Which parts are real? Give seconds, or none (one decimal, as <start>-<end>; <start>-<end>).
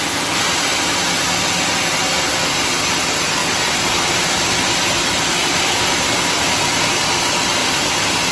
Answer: 0.0-3.4; 6.4-7.6